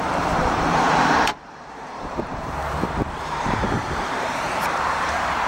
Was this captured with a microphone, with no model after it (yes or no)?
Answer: no